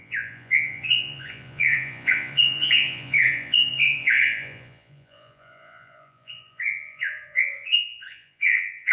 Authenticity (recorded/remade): remade